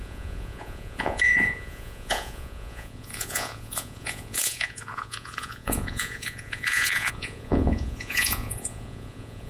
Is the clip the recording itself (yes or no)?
no